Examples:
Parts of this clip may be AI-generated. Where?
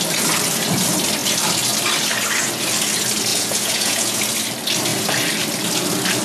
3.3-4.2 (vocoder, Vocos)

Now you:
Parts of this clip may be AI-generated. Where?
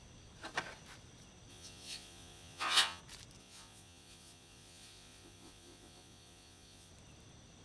1.5-3.0 (vocoder, Vocos); 3.4-6.9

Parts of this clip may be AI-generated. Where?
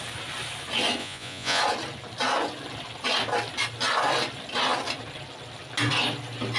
1.0-1.6 (vocoder, Vocos)